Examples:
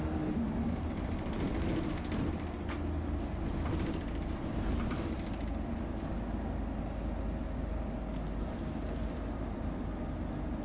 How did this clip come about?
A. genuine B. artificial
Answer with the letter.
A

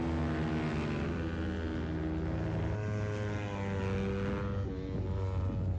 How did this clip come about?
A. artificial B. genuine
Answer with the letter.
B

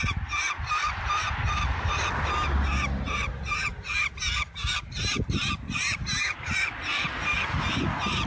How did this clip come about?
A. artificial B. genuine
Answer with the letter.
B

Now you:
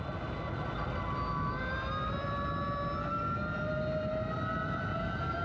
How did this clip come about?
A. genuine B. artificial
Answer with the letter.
A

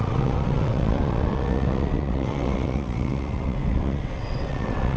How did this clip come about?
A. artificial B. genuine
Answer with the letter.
A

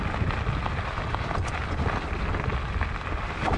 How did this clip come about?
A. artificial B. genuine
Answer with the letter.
B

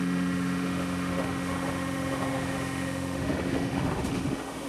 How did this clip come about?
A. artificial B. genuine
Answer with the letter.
A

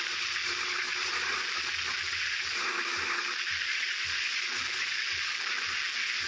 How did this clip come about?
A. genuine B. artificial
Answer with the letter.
A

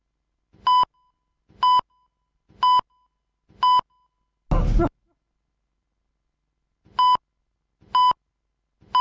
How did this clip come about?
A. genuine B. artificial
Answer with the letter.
A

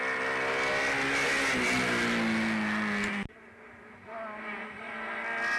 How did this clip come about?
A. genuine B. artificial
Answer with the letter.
A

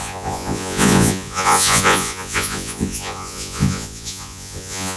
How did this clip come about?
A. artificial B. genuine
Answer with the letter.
A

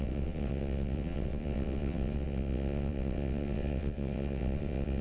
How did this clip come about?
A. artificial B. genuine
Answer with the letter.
A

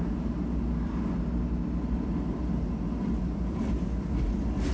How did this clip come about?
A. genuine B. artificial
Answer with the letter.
A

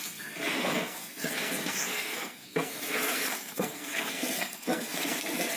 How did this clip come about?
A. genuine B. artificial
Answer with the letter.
B